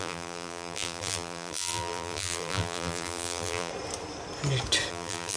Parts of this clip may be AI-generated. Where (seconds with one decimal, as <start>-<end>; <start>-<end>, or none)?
0.0-3.7; 4.9-5.4